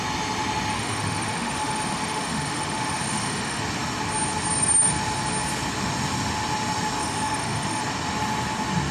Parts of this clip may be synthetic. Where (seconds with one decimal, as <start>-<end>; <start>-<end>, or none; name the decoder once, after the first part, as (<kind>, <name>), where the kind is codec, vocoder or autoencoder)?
0.7-3.6 (autoencoder, DAC-VAE); 7.0-7.8